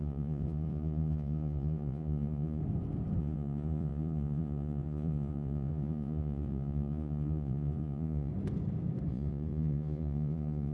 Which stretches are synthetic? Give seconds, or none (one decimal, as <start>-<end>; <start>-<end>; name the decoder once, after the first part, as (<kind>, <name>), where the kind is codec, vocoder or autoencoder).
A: 0.0-2.6 (vocoder, Vocos); 3.2-8.3; 9.1-10.7